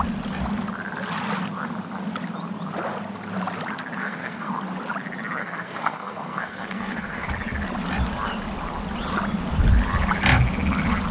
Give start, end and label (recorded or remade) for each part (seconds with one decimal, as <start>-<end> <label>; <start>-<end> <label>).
0.0-4.0 recorded; 4.0-4.5 remade; 4.5-5.4 recorded; 5.4-7.3 remade; 7.3-11.1 recorded